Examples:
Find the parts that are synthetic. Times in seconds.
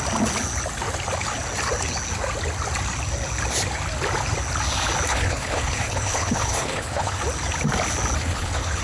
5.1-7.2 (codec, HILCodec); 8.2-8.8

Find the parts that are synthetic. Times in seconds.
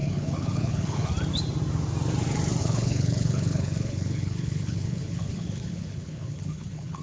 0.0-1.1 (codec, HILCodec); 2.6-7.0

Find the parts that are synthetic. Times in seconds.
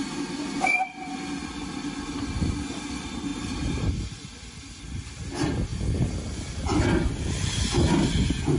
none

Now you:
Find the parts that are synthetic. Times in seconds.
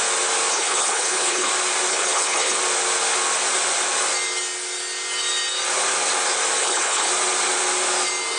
0.5-1.5 (codec, HILCodec); 1.9-2.6; 6.6-7.1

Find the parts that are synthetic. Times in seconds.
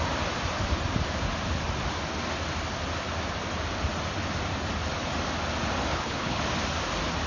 5.9-6.4 (codec, HILCodec)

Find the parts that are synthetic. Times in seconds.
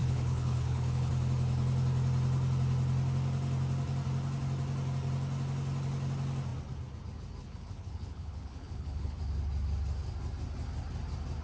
0.0-1.1 (codec, HILCodec); 7.4-9.2